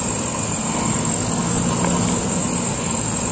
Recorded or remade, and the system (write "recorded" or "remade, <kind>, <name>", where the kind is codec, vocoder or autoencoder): recorded